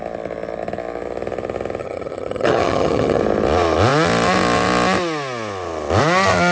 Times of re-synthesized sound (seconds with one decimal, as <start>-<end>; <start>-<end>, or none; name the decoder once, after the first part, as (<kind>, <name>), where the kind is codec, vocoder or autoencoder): 1.8-3.2 (vocoder, HiFi-GAN)